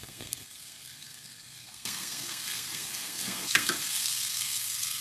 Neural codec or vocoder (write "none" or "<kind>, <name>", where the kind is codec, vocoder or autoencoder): codec, SNAC